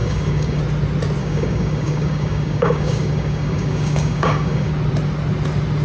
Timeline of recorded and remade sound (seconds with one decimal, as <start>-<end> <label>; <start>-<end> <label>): 0.0-0.6 remade; 0.6-1.2 recorded; 1.2-4.7 remade; 4.7-5.8 recorded